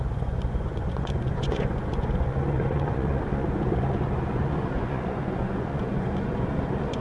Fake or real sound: fake